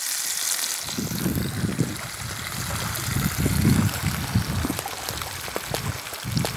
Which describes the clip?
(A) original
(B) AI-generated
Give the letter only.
A